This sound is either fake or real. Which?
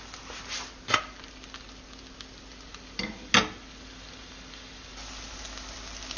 real